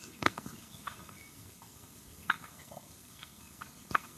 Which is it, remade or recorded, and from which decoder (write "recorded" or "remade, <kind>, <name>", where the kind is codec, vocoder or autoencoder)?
remade, codec, SNAC